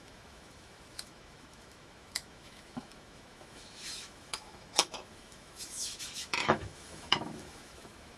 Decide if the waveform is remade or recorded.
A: remade